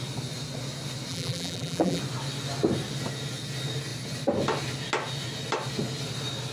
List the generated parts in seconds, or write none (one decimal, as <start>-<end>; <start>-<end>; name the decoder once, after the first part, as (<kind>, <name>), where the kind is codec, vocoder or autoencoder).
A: 1.1-2.0 (vocoder, BigVGAN v2)